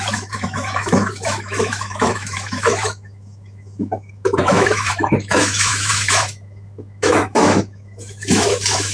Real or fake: fake